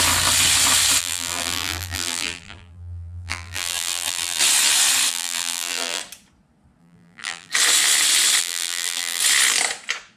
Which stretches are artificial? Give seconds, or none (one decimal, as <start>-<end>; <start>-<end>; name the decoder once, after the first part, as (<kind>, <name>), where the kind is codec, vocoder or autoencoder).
1.0-4.4 (vocoder, BigVGAN v2); 5.1-6.0; 6.8-7.5; 8.4-9.2